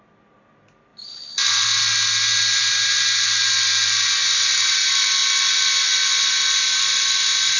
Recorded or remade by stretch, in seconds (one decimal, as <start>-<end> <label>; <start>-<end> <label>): 0.0-0.9 recorded; 0.9-1.8 remade; 1.8-7.6 recorded